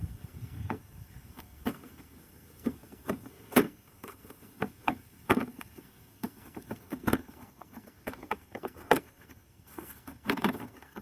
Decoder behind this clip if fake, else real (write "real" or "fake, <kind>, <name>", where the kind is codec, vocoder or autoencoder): fake, codec, SNAC